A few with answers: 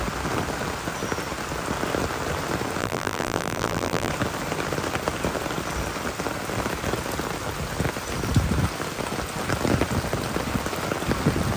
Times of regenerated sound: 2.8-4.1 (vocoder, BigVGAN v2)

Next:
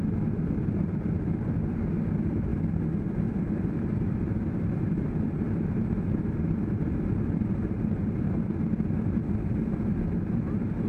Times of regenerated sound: 0.0-2.5 (vocoder, BigVGAN v2); 3.4-9.2; 9.9-10.9

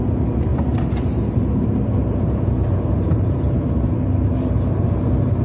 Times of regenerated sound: 0.5-3.7 (vocoder, BigVGAN v2)

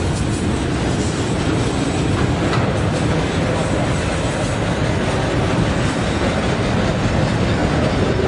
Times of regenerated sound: 6.0-6.7 (vocoder, BigVGAN v2); 7.6-8.3